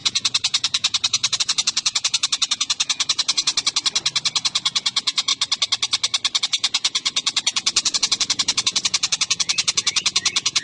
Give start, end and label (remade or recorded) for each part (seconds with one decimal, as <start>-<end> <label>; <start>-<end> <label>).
0.0-3.5 remade; 3.5-4.4 recorded; 4.4-5.3 remade; 5.3-6.4 recorded; 6.4-10.6 remade